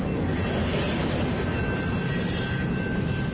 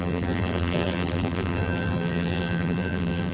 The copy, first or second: second